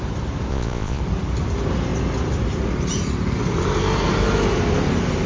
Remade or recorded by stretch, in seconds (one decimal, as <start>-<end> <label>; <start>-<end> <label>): 0.0-0.5 recorded; 0.5-1.0 remade; 1.0-5.3 recorded